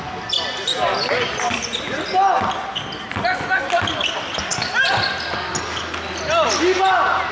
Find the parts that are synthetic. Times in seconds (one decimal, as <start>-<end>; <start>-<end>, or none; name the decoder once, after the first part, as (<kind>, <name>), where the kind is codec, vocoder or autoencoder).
none